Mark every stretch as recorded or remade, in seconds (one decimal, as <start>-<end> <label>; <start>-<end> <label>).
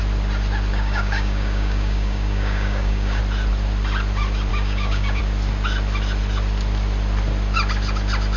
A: 0.0-0.7 recorded; 0.7-3.2 remade; 3.2-4.5 recorded; 4.5-5.2 remade; 5.2-8.4 recorded